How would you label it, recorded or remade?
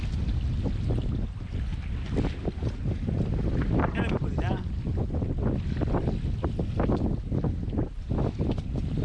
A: recorded